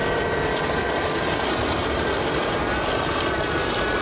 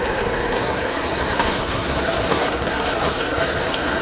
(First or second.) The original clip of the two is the first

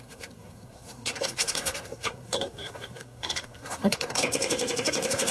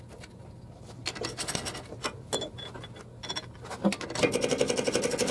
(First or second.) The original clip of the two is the second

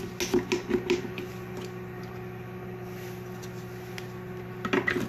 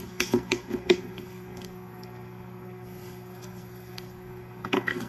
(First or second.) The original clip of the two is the first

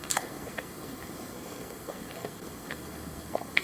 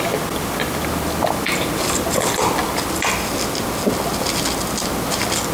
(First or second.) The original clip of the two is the second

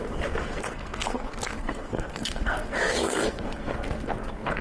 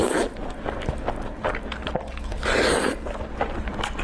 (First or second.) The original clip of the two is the second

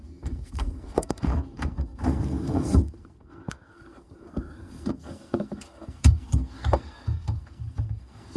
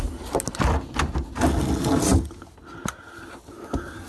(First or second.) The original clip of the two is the second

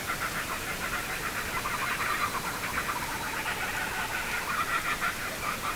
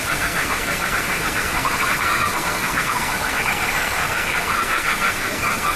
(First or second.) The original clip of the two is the first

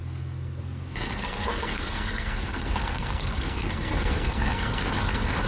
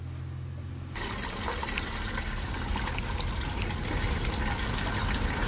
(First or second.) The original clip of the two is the second